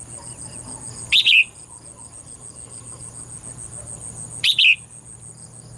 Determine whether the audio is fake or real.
real